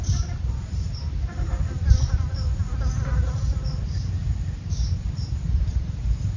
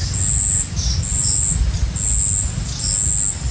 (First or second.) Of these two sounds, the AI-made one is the first